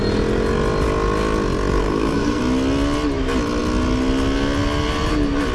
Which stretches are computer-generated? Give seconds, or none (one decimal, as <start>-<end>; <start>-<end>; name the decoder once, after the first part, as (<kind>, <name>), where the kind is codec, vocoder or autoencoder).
1.8-2.4 (codec, SNAC)